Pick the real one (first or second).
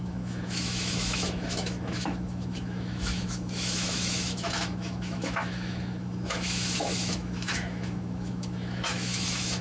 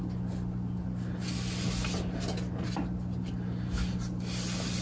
second